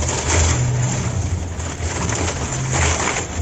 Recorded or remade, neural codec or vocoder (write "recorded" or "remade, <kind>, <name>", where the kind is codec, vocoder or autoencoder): recorded